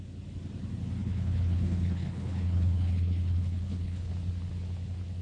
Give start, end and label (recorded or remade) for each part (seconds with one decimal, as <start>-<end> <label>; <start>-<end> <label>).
0.0-1.0 recorded; 1.0-4.1 remade; 4.1-5.2 recorded